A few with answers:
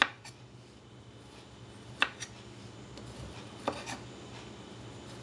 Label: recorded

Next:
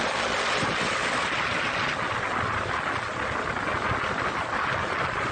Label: recorded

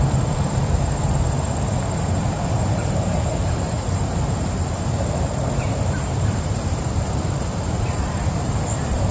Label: remade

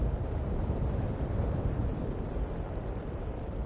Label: remade